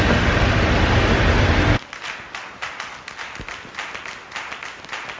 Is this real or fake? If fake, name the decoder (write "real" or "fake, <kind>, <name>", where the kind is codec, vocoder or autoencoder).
real